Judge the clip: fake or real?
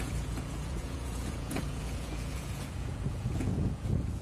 fake